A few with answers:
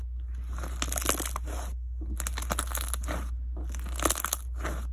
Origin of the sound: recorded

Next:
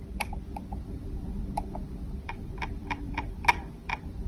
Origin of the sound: remade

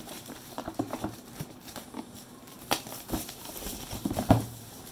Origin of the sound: remade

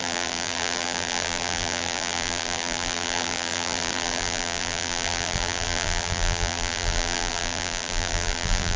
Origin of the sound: remade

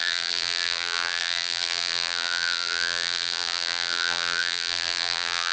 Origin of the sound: remade